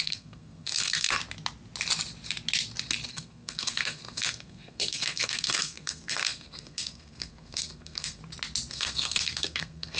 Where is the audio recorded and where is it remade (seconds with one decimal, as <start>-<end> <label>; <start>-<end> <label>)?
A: 0.0-1.2 remade; 1.2-3.1 recorded; 3.1-8.2 remade; 8.2-8.7 recorded; 8.7-10.0 remade